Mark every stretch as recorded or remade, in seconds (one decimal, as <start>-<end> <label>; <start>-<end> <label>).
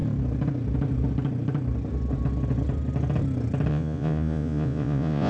0.0-3.7 recorded; 3.7-5.3 remade